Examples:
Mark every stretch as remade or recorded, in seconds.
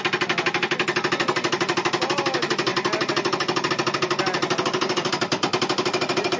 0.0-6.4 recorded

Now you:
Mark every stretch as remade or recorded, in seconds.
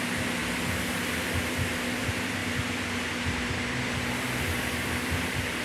0.0-5.6 recorded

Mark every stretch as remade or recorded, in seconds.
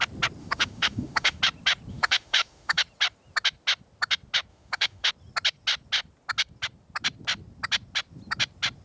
0.0-0.4 recorded; 0.4-1.4 remade; 1.4-1.9 recorded; 1.9-2.8 remade; 2.8-4.5 recorded; 4.5-5.1 remade; 5.1-8.8 recorded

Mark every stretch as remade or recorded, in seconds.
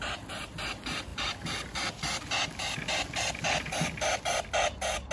0.0-5.1 recorded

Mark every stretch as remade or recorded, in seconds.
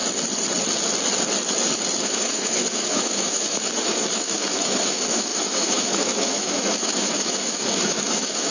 0.0-2.0 recorded; 2.0-8.5 remade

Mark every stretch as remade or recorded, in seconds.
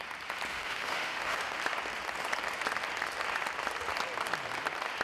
0.0-0.5 recorded; 0.5-1.6 remade; 1.6-5.0 recorded